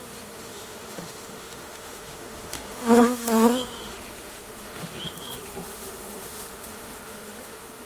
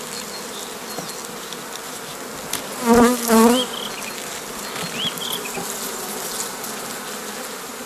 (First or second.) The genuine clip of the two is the second